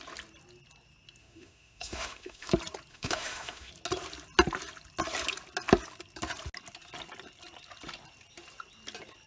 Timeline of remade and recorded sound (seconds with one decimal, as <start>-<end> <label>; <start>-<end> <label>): 0.0-1.2 recorded; 1.2-2.5 remade; 2.5-2.9 recorded; 2.9-3.7 remade; 3.7-9.3 recorded